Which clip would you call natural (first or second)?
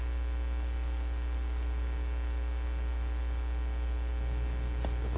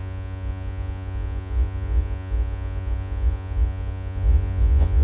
first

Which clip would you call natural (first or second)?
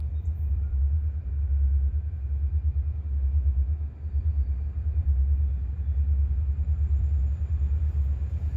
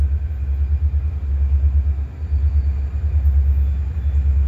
second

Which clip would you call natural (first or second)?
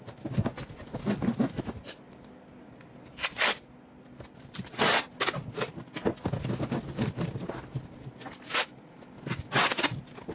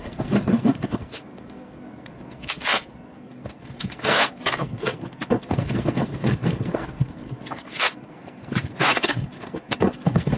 first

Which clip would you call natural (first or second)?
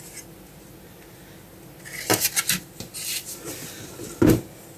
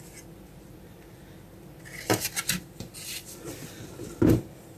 first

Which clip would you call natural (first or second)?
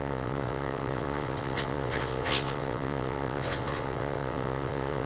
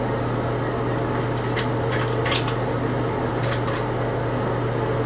second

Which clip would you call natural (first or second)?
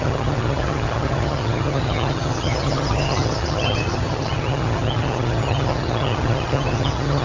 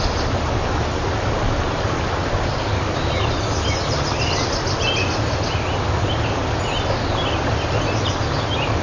second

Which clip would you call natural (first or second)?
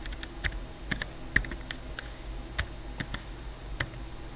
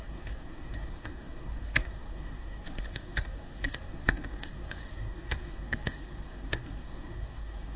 first